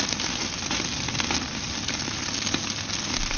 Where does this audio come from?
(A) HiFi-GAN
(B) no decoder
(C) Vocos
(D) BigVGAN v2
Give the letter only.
B